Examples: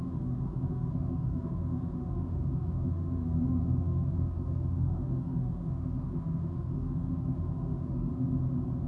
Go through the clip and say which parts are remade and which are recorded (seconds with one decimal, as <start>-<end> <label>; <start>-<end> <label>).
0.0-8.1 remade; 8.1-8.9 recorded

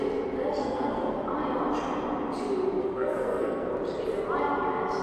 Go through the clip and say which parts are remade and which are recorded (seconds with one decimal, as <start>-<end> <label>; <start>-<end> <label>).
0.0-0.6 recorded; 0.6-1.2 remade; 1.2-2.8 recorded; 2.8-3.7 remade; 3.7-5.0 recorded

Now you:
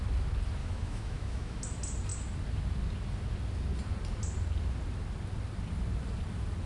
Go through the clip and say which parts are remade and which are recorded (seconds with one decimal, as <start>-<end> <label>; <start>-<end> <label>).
0.0-0.6 recorded; 0.6-1.6 remade; 1.6-6.7 recorded

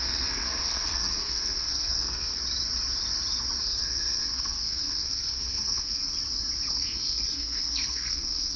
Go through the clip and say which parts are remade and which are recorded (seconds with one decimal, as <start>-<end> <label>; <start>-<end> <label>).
0.0-2.4 remade; 2.4-3.6 recorded; 3.6-6.0 remade; 6.0-6.7 recorded; 6.7-8.6 remade

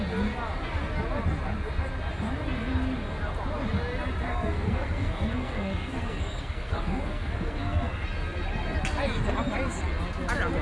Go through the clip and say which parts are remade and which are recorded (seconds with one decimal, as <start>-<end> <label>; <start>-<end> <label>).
0.0-4.3 recorded; 4.3-8.0 remade; 8.0-10.6 recorded